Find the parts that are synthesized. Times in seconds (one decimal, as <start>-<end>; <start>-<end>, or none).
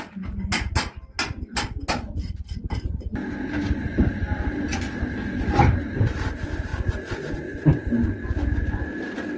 none